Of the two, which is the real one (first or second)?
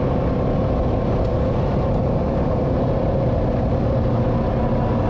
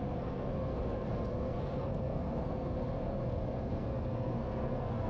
first